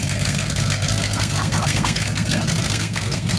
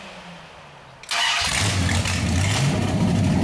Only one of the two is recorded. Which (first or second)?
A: second